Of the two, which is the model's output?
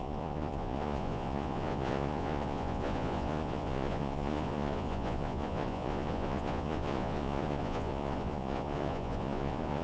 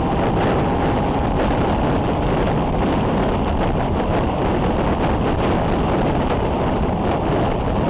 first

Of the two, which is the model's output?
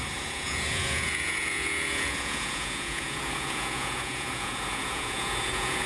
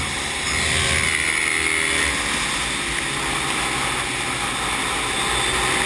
first